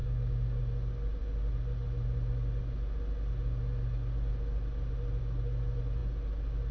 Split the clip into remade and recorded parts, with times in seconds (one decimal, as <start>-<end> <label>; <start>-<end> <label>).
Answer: 0.0-0.6 remade; 0.6-6.7 recorded